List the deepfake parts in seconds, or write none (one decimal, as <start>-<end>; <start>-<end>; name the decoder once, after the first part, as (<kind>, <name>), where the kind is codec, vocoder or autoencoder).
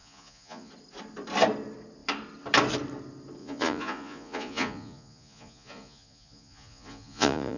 0.0-0.7 (vocoder, Vocos); 3.4-7.6